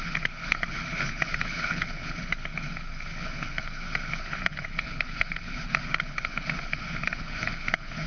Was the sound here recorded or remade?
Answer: remade